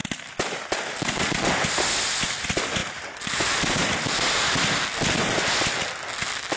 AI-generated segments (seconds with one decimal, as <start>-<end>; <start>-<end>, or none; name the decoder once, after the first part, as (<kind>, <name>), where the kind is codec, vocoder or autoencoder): none